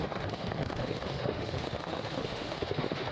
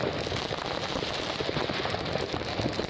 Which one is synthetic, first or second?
first